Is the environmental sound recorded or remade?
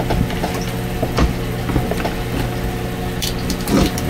recorded